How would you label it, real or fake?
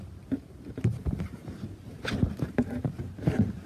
fake